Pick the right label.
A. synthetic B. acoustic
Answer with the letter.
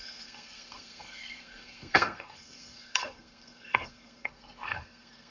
A